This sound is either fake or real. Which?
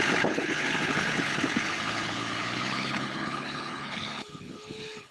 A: fake